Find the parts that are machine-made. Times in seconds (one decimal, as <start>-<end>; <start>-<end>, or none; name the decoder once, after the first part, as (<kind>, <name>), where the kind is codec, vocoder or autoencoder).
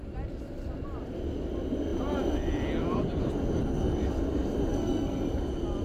4.7-5.2 (codec, SNAC)